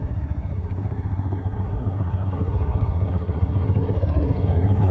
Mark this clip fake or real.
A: fake